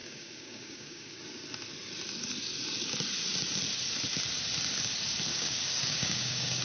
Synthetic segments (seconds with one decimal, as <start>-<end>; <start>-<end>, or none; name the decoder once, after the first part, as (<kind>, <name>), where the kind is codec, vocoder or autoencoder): 0.0-1.2 (codec, DAC); 5.3-6.6